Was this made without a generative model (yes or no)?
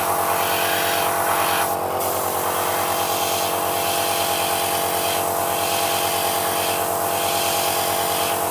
yes